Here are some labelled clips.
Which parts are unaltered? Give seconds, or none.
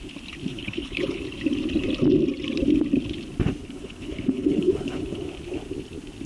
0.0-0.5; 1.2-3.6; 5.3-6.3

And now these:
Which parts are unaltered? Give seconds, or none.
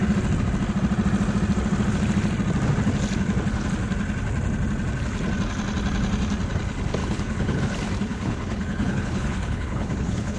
0.0-7.0; 7.6-8.1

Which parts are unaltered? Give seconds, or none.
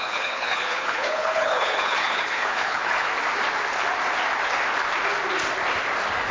3.1-6.3